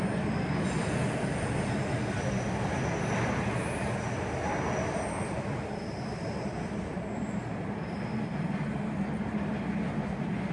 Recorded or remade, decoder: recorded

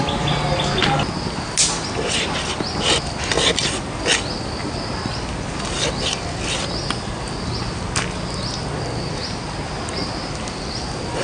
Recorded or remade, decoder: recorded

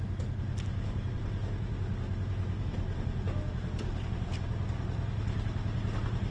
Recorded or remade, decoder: recorded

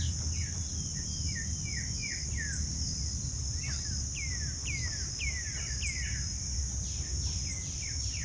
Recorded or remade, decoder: recorded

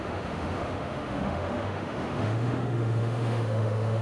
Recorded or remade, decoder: remade, autoencoder, DAC-VAE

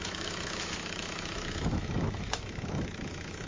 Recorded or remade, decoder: remade, autoencoder, DAC-VAE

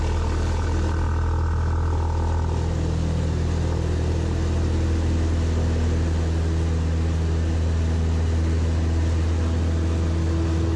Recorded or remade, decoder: recorded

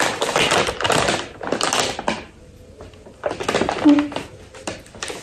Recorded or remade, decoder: recorded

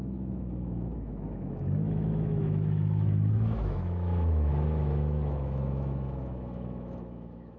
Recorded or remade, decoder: remade, autoencoder, DAC-VAE